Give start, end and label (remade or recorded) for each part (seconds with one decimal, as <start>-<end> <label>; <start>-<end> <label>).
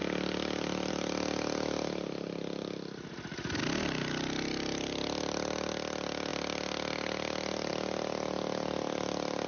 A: 0.0-9.5 recorded